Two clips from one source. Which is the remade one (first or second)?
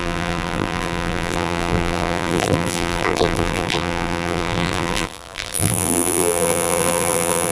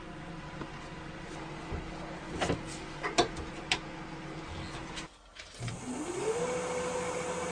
first